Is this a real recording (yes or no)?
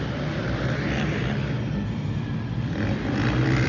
yes